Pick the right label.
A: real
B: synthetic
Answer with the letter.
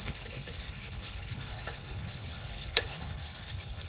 B